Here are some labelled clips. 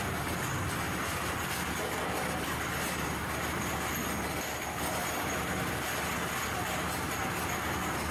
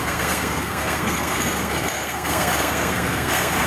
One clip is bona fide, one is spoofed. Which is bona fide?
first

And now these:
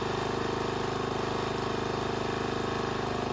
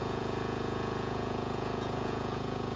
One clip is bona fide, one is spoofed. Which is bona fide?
first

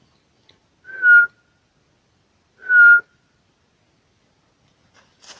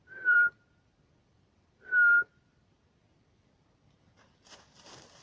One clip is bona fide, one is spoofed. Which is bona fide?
first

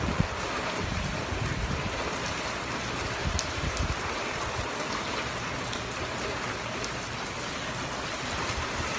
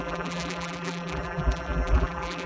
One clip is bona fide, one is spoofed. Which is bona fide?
first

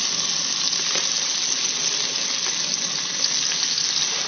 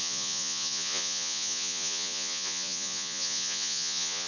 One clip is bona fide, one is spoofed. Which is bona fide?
first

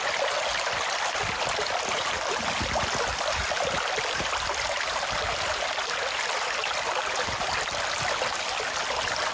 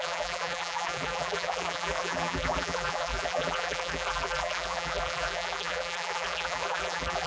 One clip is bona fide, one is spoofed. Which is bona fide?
first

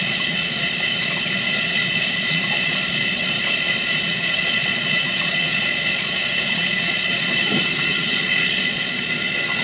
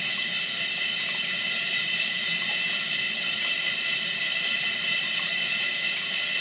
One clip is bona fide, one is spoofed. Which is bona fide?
second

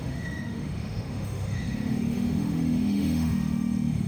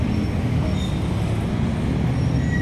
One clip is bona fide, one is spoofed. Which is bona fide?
second